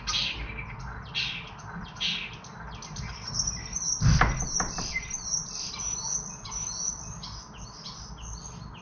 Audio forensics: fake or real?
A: real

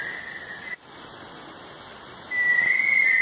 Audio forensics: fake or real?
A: real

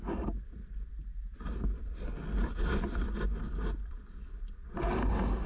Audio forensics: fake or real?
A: real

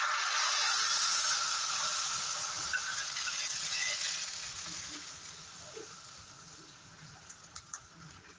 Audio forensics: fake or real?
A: fake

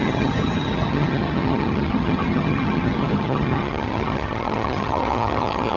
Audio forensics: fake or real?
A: fake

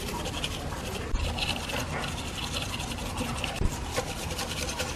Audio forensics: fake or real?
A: real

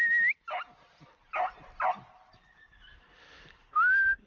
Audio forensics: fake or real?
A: real